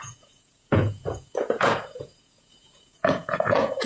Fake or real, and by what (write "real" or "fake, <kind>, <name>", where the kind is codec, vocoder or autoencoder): fake, vocoder, Vocos